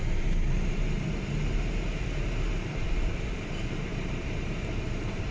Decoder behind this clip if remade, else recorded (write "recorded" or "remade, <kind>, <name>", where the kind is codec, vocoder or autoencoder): remade, vocoder, BigVGAN v2